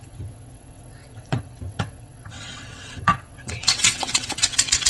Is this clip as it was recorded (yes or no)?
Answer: no